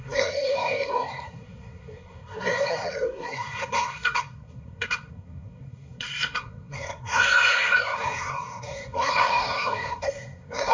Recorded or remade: remade